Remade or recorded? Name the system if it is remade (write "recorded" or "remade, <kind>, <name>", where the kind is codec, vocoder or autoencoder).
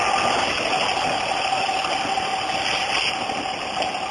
recorded